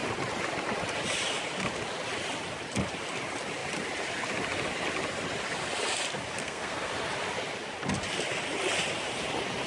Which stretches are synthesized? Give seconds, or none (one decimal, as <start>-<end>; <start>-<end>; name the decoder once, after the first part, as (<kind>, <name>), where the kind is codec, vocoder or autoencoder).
6.4-6.9 (codec, SNAC)